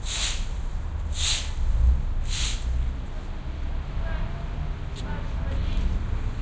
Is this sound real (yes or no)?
yes